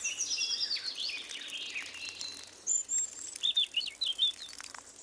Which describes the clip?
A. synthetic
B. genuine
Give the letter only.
B